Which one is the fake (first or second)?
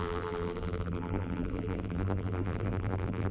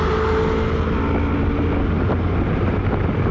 first